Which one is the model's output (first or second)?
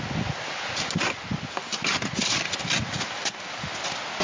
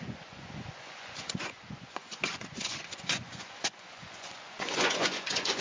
second